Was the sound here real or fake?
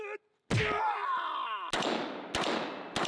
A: real